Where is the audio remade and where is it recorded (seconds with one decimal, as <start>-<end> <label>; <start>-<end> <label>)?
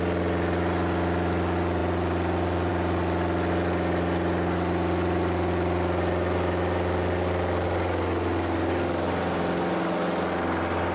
0.0-10.9 recorded